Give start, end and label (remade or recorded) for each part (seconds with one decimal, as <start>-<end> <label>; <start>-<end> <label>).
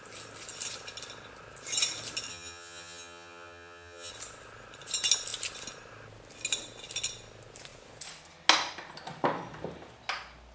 0.0-2.3 recorded; 2.3-4.1 remade; 4.1-10.5 recorded